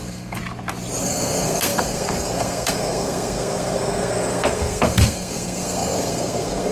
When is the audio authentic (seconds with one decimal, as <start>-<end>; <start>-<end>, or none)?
0.4-1.0